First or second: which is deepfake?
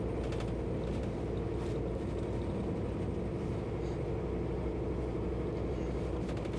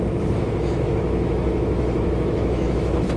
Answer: second